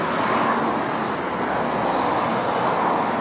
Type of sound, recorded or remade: recorded